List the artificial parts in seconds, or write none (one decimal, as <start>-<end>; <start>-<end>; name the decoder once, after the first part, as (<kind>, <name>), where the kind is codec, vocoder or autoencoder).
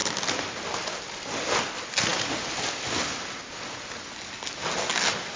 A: none